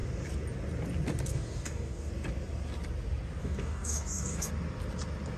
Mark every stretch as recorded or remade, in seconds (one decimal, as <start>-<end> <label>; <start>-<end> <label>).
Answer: 0.0-1.3 recorded; 1.3-2.1 remade; 2.1-3.4 recorded; 3.4-4.5 remade; 4.5-5.4 recorded